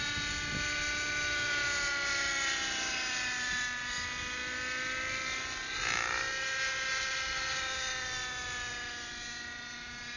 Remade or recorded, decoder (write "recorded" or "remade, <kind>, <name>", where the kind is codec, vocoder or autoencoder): recorded